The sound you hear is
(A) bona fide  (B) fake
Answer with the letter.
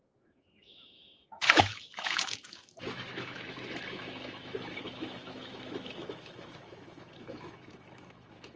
B